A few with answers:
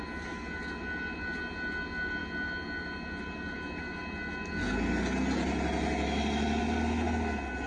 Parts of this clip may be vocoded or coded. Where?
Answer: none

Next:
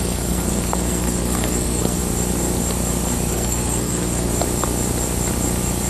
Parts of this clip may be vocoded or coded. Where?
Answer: 0.0-2.0 (codec, SNAC); 3.3-4.3

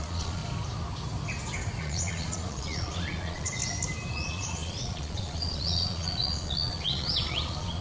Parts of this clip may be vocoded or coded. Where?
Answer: 0.0-0.4 (vocoder, Vocos); 1.8-3.6; 4.1-7.8

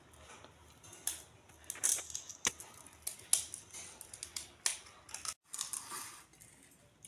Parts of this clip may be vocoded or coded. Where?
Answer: none

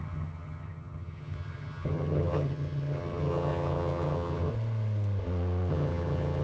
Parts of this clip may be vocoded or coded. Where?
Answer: 0.0-4.5 (vocoder, HiFi-GAN); 5.7-6.4

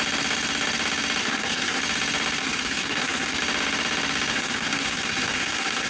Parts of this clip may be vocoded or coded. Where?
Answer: 1.2-1.8 (codec, SNAC); 2.4-3.4; 4.3-5.9

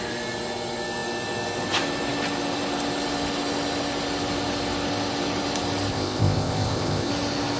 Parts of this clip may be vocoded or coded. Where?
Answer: 5.9-7.1 (codec, ZipCodec)